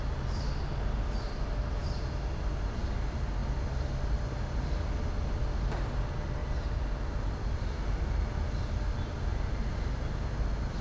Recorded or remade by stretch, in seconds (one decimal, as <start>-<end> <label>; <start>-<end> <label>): 0.0-6.4 recorded; 6.4-7.9 remade; 7.9-10.8 recorded